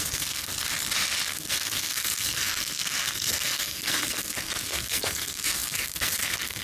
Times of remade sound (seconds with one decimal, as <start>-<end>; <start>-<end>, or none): 0.0-0.5; 1.3-6.6